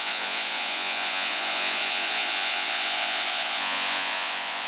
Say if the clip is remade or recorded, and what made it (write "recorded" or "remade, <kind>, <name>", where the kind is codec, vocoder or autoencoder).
remade, vocoder, Vocos